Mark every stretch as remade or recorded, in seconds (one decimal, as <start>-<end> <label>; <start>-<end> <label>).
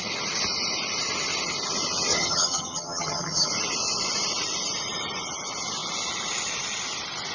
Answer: 0.0-2.1 recorded; 2.1-3.5 remade; 3.5-7.3 recorded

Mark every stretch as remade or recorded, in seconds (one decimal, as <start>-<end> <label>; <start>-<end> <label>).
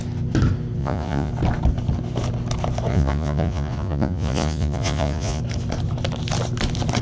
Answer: 0.0-0.8 recorded; 0.8-1.3 remade; 1.3-2.9 recorded; 2.9-5.4 remade; 5.4-7.0 recorded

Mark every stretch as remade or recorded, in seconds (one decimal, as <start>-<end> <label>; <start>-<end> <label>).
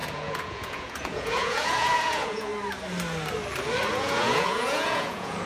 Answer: 0.0-2.5 remade; 2.5-3.9 recorded; 3.9-5.5 remade